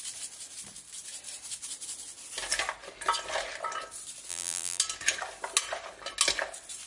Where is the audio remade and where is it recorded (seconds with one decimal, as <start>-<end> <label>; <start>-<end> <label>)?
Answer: 0.0-4.3 recorded; 4.3-4.8 remade; 4.8-6.9 recorded